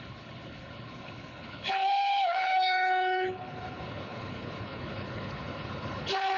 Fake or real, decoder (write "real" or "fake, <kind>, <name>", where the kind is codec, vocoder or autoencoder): fake, codec, HILCodec